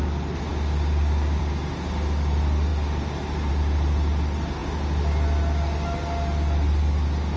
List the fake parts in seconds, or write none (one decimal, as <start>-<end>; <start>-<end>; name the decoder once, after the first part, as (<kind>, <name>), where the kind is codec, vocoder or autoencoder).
0.5-1.4 (codec, DAC)